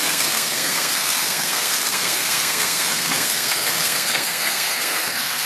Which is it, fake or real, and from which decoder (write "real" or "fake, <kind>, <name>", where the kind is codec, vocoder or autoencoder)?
fake, codec, SNAC